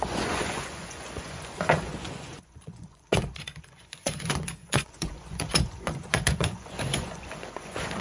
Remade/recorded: remade